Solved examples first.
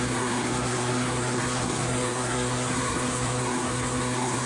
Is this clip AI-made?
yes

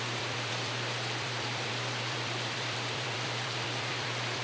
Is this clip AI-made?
yes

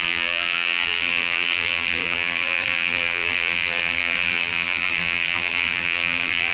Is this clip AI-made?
yes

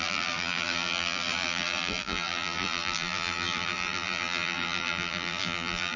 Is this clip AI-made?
yes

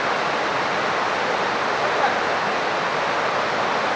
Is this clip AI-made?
no